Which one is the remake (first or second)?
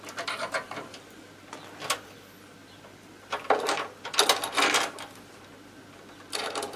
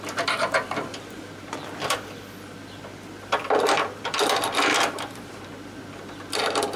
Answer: second